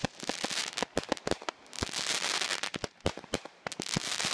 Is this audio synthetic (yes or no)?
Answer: no